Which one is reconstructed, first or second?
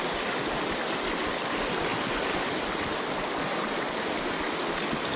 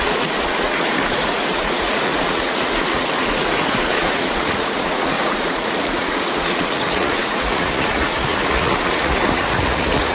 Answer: second